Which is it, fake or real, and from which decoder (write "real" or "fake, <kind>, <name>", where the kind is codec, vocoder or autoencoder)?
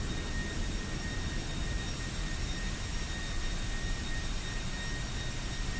real